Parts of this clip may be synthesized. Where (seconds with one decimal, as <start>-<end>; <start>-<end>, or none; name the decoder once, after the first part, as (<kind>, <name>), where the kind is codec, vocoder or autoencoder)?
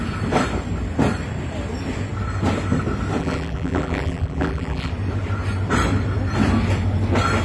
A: 3.2-4.9 (vocoder, BigVGAN v2)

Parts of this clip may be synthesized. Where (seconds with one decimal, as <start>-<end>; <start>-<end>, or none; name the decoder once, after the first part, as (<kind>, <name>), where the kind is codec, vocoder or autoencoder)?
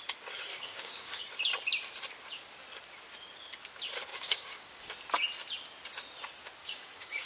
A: 0.5-1.2 (codec, DAC); 4.1-4.9; 6.6-7.3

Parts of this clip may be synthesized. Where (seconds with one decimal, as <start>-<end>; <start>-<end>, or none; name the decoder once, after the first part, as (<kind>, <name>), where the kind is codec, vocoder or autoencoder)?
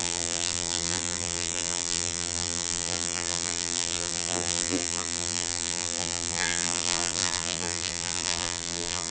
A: 0.0-9.1 (vocoder, BigVGAN v2)